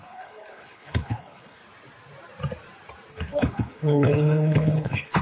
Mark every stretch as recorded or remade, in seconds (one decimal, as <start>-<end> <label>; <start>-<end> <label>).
0.0-1.6 remade; 1.6-3.1 recorded; 3.1-5.2 remade